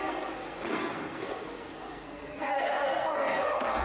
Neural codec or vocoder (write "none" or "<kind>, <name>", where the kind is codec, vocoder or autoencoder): codec, SNAC